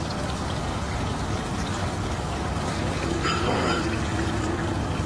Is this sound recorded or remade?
remade